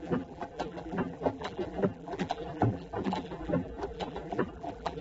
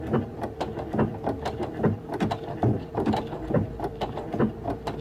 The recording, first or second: second